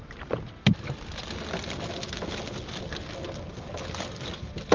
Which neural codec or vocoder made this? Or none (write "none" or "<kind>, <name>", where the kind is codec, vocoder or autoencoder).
none